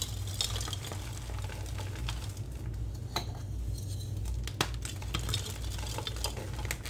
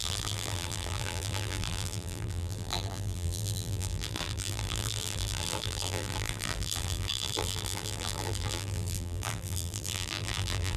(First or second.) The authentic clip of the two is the first